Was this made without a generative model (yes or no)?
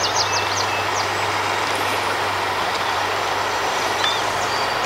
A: yes